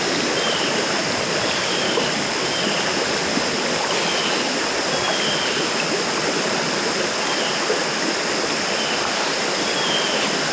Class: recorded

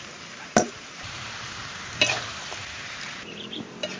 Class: remade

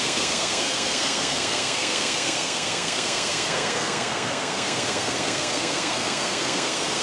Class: remade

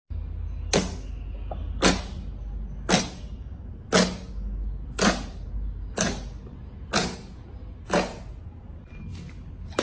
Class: recorded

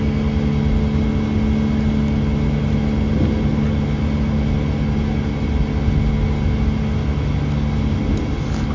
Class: recorded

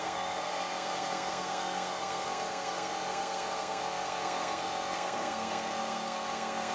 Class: remade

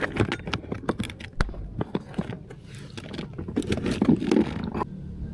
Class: recorded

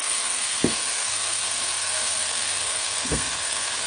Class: remade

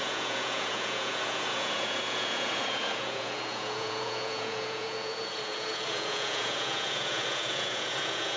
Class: remade